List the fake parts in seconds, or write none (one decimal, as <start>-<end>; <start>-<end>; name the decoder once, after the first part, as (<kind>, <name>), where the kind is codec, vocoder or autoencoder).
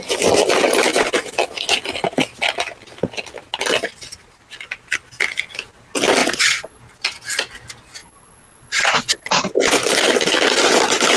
6.2-6.8 (vocoder, Vocos); 8.0-9.3